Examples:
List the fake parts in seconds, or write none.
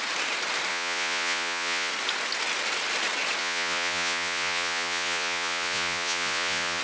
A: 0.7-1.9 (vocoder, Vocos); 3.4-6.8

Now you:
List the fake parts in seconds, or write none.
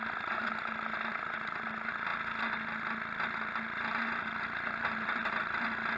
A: none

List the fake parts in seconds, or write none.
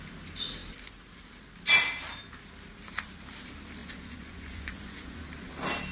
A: 3.8-5.2 (vocoder, Vocos)